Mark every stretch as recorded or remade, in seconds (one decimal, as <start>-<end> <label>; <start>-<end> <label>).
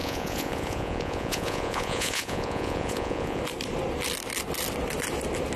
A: 0.0-3.4 remade; 3.4-5.6 recorded